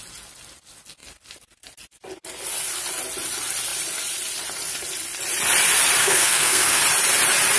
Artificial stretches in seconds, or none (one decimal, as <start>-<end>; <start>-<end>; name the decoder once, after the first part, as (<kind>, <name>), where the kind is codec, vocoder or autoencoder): 6.0-6.8 (codec, SNAC)